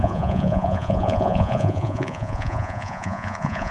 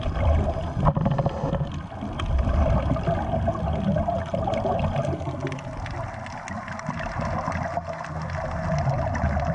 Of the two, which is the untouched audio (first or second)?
second